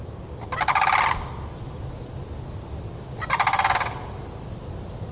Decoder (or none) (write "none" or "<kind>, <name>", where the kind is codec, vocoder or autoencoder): none